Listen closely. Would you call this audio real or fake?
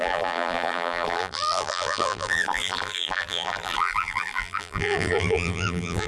fake